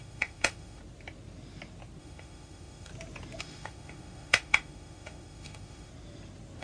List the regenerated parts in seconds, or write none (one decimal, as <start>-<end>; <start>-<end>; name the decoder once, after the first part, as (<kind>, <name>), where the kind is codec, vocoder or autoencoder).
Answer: 0.0-0.8 (autoencoder, DAC-VAE); 2.0-2.9; 3.4-5.9